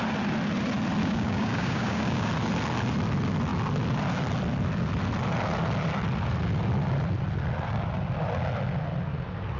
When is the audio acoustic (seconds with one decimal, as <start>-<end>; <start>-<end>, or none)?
0.0-1.0; 2.3-9.6